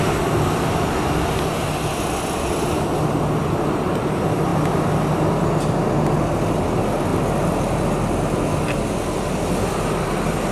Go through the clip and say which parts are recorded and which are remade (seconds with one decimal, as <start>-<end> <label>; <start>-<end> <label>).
0.0-10.5 recorded